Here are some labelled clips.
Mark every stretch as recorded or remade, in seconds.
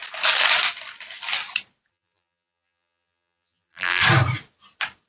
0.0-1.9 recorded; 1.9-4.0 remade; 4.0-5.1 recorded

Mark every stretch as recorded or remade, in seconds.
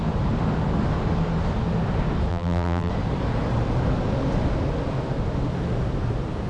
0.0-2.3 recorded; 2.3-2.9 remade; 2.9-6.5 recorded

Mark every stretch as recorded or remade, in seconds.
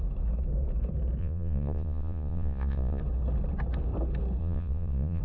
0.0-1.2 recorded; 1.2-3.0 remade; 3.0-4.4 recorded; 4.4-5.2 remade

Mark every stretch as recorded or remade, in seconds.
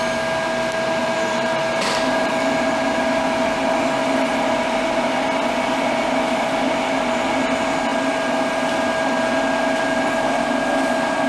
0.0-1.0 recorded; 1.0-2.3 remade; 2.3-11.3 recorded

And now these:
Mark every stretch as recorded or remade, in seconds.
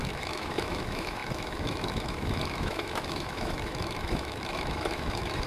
0.0-5.5 remade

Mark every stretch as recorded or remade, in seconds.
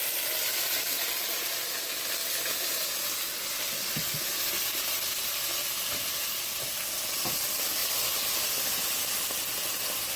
0.0-2.2 recorded; 2.2-3.7 remade; 3.7-7.8 recorded; 7.8-9.2 remade; 9.2-10.2 recorded